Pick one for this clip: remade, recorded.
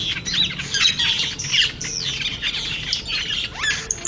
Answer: recorded